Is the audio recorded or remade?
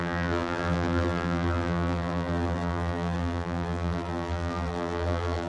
remade